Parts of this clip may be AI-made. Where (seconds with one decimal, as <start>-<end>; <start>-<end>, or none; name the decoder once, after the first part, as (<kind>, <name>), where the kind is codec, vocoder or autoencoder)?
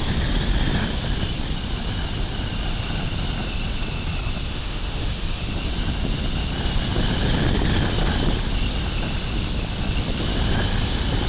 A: 4.5-5.4 (autoencoder, DAC-VAE)